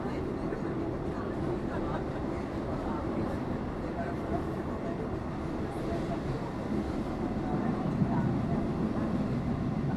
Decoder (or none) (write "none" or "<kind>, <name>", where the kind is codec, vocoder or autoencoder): none